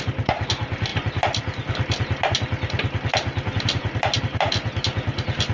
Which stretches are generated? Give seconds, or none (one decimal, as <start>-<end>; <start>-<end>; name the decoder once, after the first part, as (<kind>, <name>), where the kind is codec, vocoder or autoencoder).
none

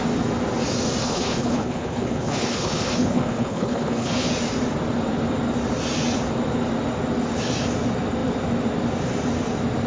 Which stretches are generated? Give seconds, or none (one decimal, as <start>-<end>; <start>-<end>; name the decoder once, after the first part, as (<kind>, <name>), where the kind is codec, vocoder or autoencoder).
1.0-4.3 (codec, HILCodec)